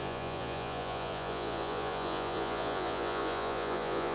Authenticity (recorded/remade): remade